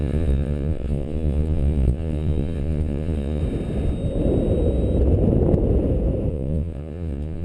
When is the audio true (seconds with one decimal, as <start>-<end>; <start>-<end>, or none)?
3.4-6.3

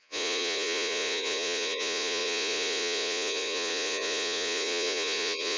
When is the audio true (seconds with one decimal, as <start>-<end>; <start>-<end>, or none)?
none

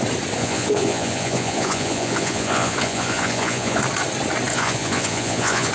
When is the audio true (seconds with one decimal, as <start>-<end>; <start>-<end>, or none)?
0.0-0.4; 3.8-4.5

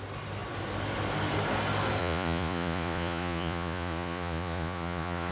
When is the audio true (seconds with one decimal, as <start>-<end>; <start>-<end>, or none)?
0.0-2.0

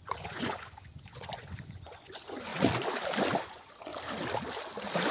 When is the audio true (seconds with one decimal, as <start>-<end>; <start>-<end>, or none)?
2.5-3.4; 3.9-5.1

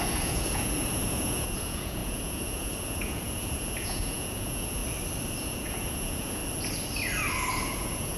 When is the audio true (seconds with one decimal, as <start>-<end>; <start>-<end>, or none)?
4.8-5.4; 6.4-7.5